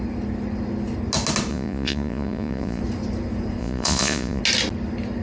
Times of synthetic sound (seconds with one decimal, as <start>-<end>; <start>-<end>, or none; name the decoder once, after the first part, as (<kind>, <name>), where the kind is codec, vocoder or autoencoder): 1.5-2.8 (vocoder, Vocos); 3.6-4.4